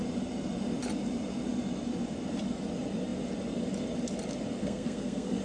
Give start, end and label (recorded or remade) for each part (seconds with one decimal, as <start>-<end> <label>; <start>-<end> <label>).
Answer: 0.0-4.6 recorded; 4.6-5.4 remade